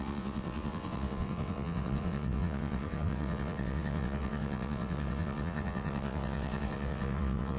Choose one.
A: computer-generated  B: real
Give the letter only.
A